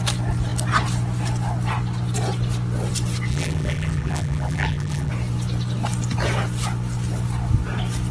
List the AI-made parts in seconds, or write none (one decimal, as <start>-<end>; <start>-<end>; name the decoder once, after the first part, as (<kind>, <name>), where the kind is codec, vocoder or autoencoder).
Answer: 3.3-5.1 (vocoder, BigVGAN v2)